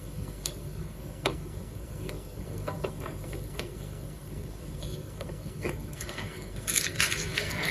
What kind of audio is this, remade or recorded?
remade